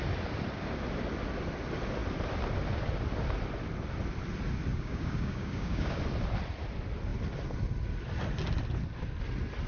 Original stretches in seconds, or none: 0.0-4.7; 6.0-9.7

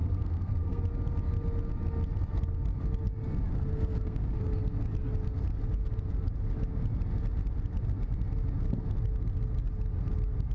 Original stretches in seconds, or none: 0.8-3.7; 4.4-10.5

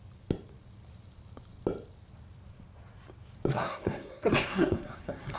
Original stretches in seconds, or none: 0.0-3.5

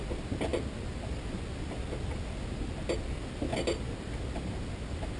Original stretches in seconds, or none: 0.0-5.2

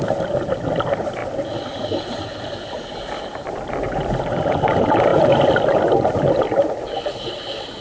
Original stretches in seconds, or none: 0.0-7.8